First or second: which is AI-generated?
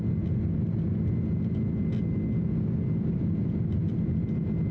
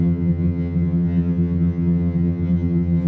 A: second